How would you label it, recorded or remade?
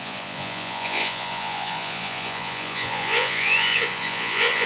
remade